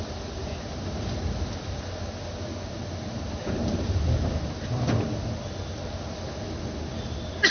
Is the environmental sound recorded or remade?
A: recorded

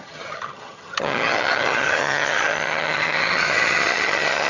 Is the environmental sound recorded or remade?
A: remade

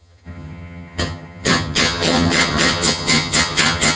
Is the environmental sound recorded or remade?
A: remade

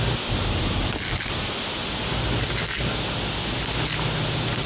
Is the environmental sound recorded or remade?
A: recorded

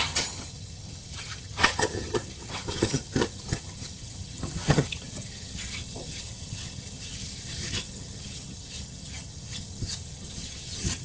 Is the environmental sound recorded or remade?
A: remade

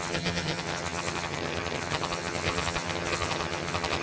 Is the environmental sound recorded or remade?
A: remade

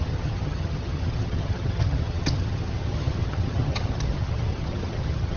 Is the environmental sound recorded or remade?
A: remade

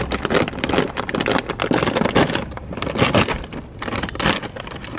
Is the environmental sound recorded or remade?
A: recorded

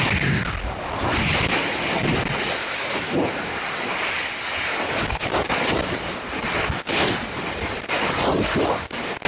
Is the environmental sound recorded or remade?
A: recorded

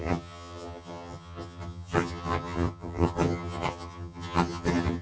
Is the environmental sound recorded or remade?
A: remade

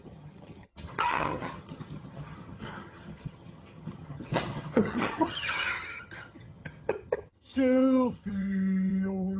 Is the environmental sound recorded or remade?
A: remade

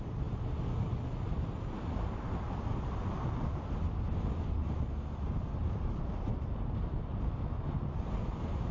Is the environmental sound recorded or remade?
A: recorded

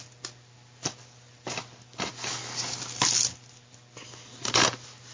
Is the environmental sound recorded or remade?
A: recorded